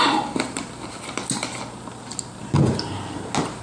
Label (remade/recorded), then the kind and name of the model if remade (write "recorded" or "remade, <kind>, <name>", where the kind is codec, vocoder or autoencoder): recorded